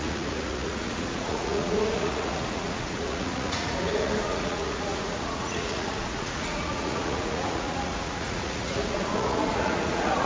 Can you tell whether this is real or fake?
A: fake